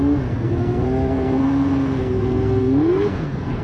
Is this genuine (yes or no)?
no